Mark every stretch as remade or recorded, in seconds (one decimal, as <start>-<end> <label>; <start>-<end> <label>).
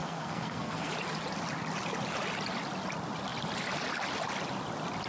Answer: 0.0-0.9 remade; 0.9-5.1 recorded